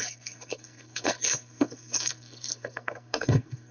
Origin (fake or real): fake